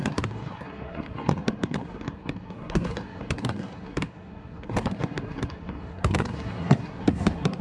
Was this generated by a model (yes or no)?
yes